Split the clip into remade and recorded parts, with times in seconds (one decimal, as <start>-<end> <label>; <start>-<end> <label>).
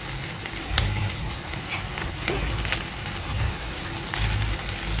0.0-0.6 recorded; 0.6-1.6 remade; 1.6-2.0 recorded; 2.0-2.5 remade; 2.5-3.2 recorded; 3.2-3.9 remade; 3.9-5.0 recorded